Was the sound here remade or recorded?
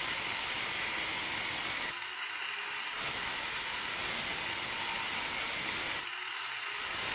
recorded